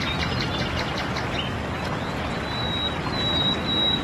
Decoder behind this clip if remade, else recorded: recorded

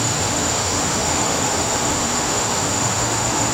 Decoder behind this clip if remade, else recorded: remade, autoencoder, DAC-VAE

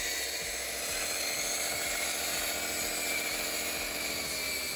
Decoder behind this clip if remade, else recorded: recorded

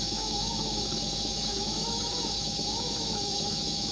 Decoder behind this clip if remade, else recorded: remade, autoencoder, DAC-VAE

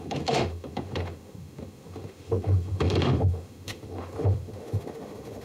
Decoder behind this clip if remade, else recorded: remade, autoencoder, DAC-VAE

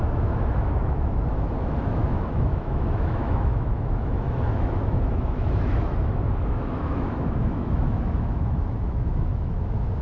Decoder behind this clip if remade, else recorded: remade, autoencoder, DAC-VAE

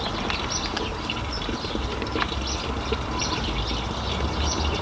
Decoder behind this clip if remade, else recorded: recorded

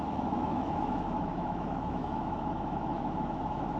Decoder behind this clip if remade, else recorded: remade, autoencoder, DAC-VAE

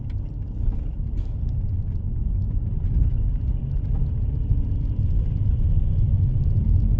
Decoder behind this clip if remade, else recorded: recorded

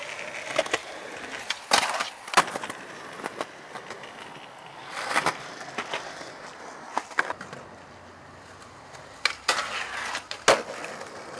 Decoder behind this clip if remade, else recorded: recorded